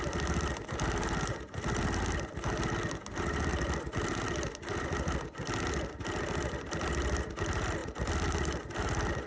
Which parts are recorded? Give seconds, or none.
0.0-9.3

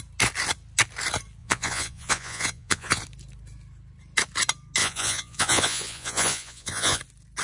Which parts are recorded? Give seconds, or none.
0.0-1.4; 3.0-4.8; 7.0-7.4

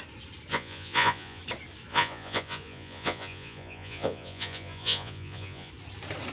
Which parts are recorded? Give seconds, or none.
0.0-0.5; 1.4-1.9; 5.7-6.3